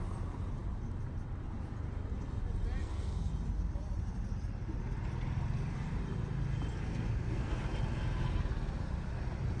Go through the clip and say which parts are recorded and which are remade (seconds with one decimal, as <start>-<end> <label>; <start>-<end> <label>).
0.0-2.8 recorded; 2.8-3.3 remade; 3.3-6.7 recorded; 6.7-7.6 remade; 7.6-9.6 recorded